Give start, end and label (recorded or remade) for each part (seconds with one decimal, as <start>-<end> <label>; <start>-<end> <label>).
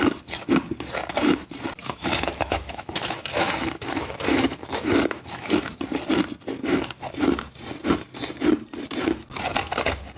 0.0-1.8 recorded; 1.8-5.7 remade; 5.7-10.2 recorded